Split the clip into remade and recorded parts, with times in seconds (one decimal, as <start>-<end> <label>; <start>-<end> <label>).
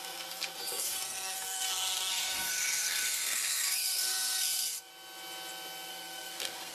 0.0-4.9 remade; 4.9-5.9 recorded; 5.9-6.7 remade